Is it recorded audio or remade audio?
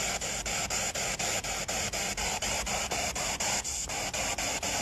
recorded